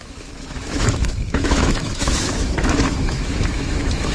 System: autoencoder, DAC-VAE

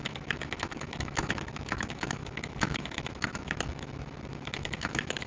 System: autoencoder, DAC-VAE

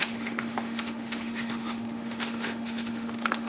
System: autoencoder, DAC-VAE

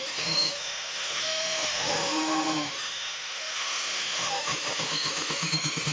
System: autoencoder, DAC-VAE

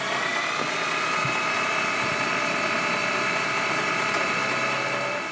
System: none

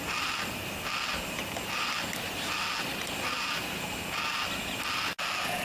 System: none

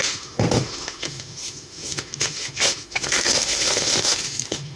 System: autoencoder, DAC-VAE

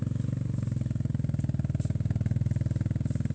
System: none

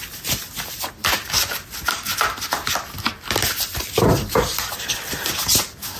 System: none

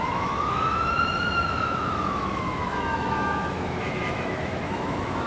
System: autoencoder, DAC-VAE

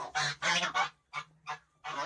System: none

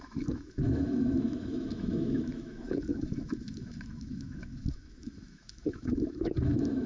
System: autoencoder, DAC-VAE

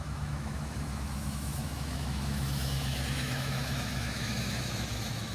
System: autoencoder, DAC-VAE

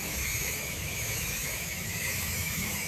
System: autoencoder, DAC-VAE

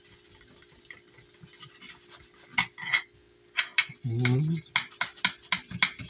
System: none